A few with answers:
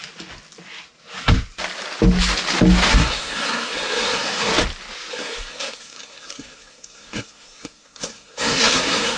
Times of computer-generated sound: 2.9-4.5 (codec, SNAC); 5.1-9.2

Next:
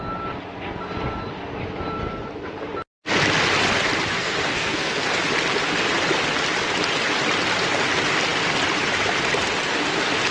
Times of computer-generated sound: 4.1-5.1 (codec, SNAC)

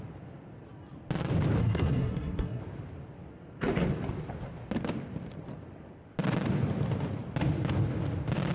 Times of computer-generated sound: 1.6-2.6 (codec, SNAC)